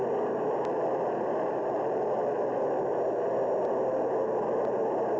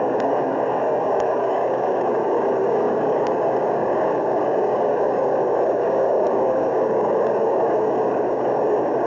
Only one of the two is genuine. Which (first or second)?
first